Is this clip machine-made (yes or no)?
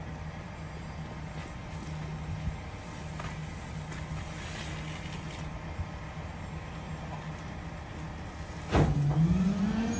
no